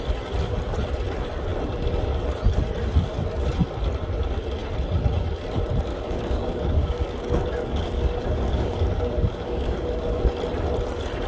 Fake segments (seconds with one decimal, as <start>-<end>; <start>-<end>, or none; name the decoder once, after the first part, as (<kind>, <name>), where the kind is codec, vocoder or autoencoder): 5.9-10.2 (codec, DAC)